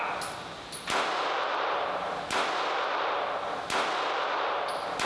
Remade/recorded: recorded